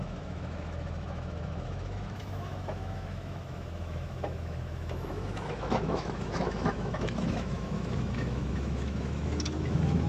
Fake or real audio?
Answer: fake